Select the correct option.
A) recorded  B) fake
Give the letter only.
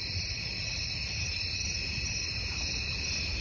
A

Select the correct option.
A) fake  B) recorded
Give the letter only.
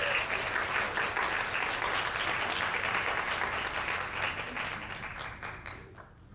B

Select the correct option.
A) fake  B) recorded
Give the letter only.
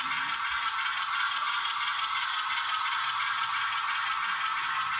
B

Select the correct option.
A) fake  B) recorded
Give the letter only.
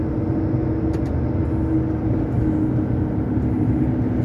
B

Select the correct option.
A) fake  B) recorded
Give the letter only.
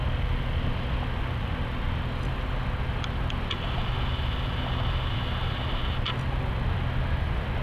B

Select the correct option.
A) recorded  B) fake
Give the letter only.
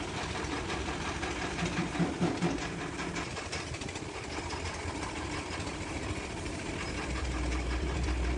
B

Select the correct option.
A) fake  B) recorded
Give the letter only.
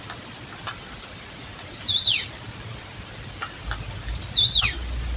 A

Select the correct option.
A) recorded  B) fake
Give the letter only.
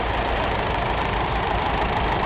B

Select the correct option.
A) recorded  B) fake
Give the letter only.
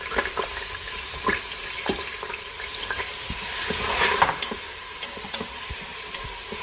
B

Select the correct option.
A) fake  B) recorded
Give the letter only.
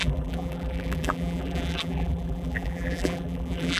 A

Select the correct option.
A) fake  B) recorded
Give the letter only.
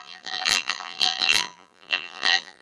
A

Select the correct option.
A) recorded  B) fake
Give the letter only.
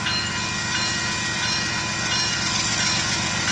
A